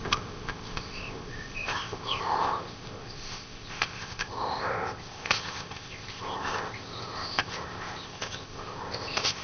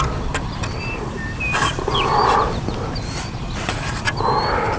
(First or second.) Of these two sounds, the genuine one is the second